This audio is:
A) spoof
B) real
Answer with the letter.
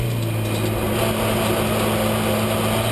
B